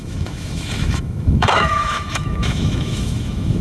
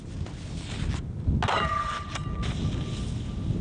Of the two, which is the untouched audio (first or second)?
second